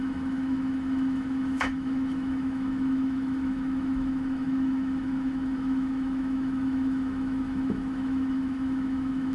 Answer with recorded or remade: remade